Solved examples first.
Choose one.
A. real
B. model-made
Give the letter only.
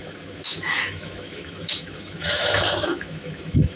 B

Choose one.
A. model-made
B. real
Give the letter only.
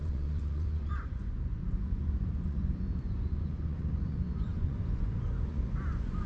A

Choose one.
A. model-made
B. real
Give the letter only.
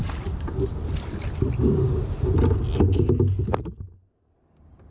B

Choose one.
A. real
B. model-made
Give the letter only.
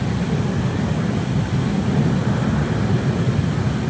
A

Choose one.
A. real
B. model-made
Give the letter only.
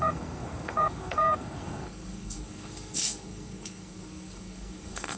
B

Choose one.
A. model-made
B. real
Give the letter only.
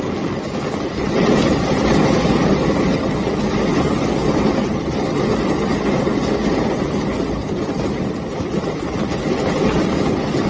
B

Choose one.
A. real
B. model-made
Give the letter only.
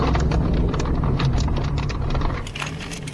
B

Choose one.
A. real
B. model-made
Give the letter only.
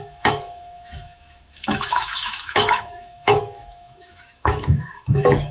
B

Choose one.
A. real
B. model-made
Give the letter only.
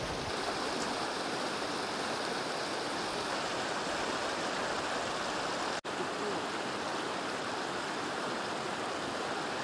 A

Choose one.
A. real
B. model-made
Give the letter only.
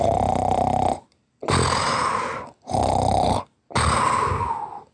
A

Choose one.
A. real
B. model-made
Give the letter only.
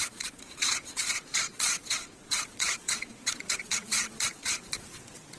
B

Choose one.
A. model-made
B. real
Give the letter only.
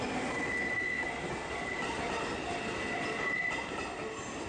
B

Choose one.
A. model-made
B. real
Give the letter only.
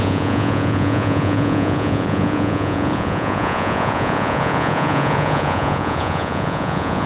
A